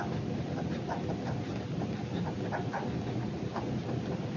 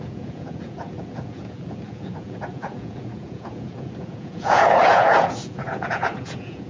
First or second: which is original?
first